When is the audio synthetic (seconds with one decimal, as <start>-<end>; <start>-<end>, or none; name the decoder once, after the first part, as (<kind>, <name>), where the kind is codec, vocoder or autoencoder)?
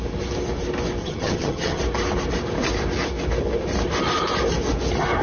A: 1.0-1.8 (vocoder, HiFi-GAN)